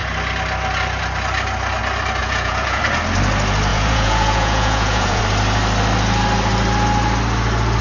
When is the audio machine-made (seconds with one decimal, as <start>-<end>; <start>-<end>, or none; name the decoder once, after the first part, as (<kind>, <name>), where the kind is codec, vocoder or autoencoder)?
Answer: 2.2-2.8 (vocoder, Vocos); 3.7-5.2